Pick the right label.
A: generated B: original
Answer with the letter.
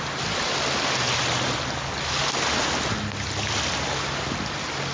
B